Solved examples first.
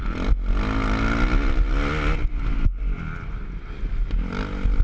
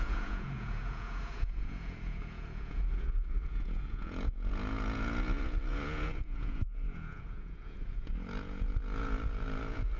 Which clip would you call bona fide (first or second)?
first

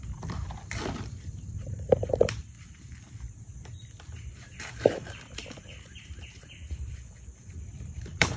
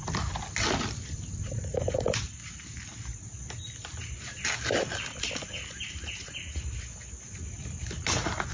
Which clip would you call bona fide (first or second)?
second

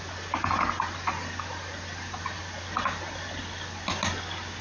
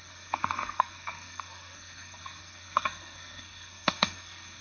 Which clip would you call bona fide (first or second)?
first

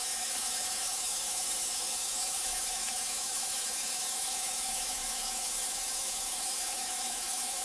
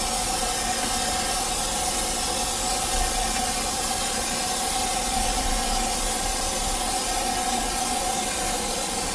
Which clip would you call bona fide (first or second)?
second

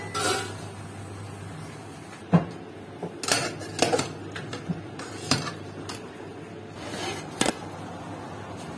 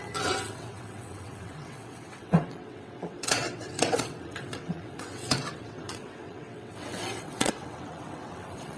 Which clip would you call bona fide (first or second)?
first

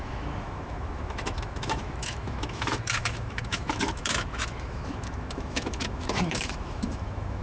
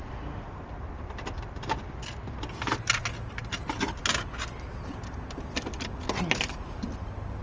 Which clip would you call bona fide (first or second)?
second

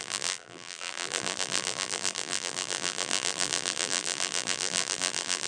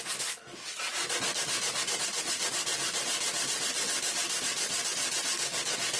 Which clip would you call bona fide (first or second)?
second